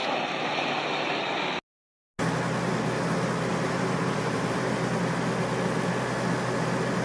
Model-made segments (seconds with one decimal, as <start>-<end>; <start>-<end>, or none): 0.0-0.7; 3.5-4.6